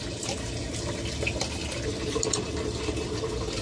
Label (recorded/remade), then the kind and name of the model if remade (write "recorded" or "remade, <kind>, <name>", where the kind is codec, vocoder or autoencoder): recorded